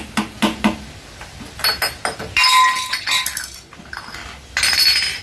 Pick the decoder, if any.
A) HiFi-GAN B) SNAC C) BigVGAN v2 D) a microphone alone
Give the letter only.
D